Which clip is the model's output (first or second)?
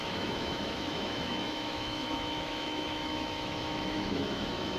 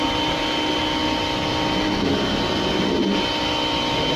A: first